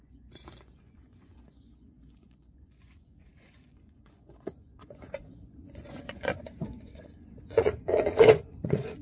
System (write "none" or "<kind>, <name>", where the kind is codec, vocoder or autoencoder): vocoder, Vocos